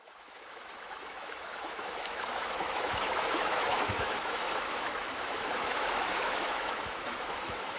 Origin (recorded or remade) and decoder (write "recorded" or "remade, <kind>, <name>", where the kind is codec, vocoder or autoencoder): remade, autoencoder, DAC-VAE